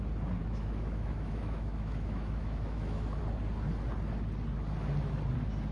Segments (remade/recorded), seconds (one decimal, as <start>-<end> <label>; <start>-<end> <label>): 0.0-0.4 recorded; 0.4-3.2 remade; 3.2-5.7 recorded